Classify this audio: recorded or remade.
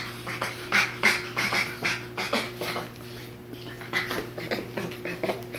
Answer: recorded